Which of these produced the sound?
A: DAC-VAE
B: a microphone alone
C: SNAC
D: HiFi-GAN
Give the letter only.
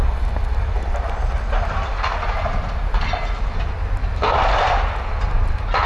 B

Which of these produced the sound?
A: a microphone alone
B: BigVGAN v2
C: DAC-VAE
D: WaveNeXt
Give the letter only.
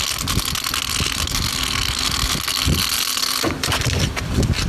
A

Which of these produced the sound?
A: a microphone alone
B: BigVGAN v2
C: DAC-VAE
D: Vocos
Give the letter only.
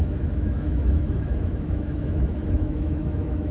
C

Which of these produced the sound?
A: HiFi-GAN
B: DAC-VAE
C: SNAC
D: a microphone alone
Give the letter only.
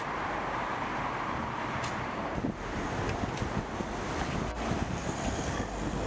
D